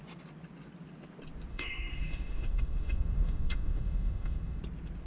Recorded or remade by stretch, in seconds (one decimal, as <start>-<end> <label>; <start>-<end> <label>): 0.0-1.5 recorded; 1.5-4.6 remade; 4.6-5.1 recorded